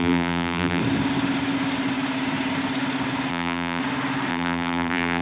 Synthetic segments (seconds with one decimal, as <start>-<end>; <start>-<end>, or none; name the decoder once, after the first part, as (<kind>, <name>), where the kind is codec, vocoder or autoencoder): 0.0-0.8 (vocoder, BigVGAN v2); 3.3-3.8; 4.3-5.2